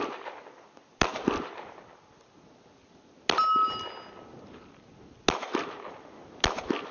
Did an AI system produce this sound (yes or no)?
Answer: no